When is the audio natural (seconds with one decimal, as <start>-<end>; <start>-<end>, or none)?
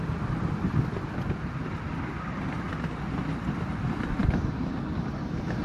0.0-5.6